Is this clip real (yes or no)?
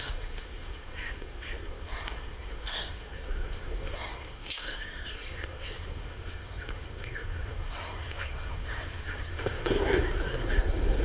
no